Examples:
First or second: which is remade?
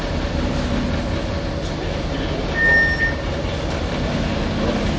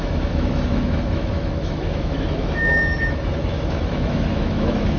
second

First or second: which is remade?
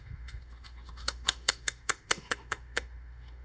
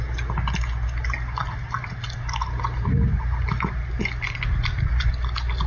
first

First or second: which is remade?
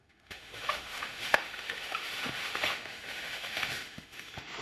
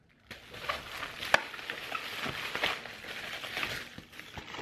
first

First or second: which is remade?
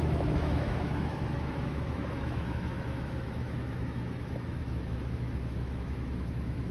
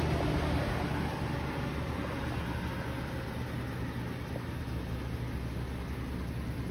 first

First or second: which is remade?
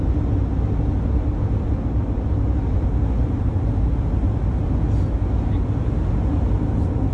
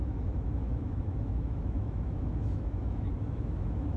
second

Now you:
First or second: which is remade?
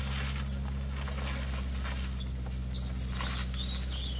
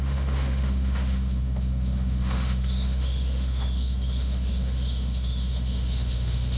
second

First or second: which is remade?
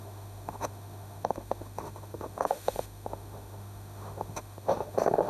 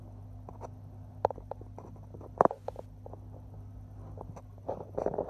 first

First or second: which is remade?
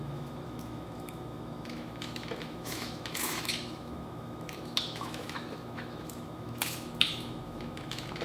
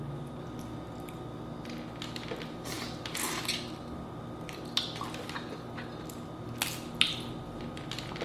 first